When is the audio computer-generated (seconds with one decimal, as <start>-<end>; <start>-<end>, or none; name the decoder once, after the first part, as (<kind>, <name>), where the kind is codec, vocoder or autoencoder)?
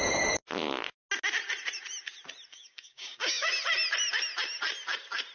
2.5-3.5 (codec, DAC)